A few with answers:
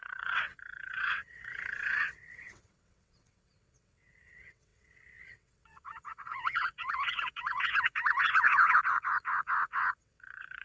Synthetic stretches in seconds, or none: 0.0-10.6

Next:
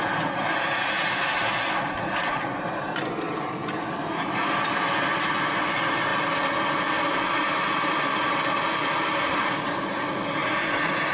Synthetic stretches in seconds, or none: none

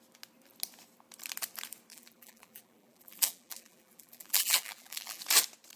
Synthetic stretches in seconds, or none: 1.9-5.2

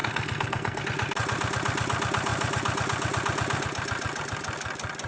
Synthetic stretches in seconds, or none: 0.0-0.8

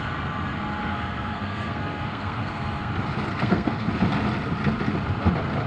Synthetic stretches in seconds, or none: 0.8-2.9; 3.3-3.9

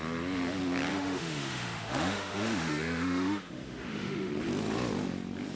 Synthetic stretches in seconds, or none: 0.9-4.3

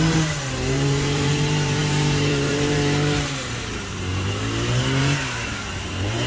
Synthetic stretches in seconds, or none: 0.0-6.3